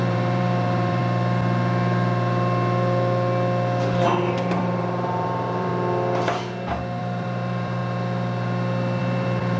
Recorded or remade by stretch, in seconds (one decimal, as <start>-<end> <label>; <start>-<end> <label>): 0.0-1.0 remade; 1.0-4.6 recorded; 4.6-5.7 remade; 5.7-7.0 recorded; 7.0-7.8 remade; 7.8-9.0 recorded; 9.0-9.6 remade